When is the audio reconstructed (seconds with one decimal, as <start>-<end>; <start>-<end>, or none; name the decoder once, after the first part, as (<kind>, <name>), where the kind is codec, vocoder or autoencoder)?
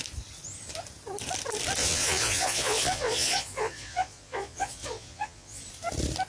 1.8-5.6 (vocoder, Vocos)